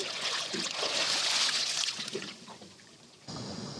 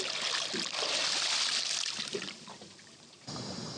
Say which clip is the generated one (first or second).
first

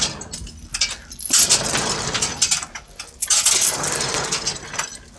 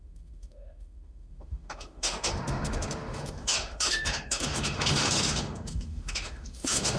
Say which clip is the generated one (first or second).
second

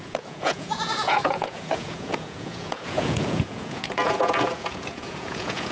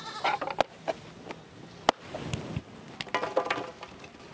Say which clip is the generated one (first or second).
first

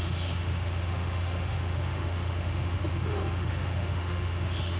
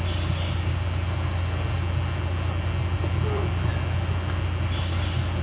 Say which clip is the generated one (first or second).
first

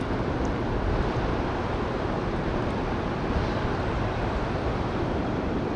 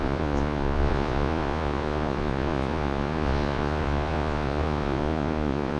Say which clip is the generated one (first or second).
second